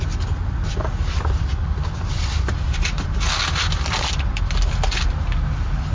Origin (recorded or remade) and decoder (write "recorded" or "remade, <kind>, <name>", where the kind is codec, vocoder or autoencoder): recorded